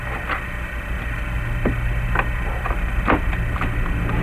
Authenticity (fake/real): real